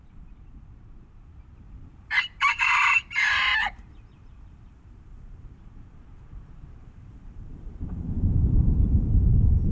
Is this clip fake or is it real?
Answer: fake